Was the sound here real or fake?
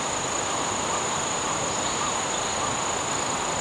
real